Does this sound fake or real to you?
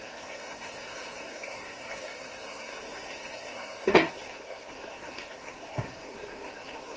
fake